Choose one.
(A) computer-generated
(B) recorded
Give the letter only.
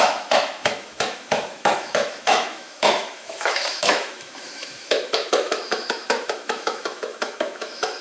A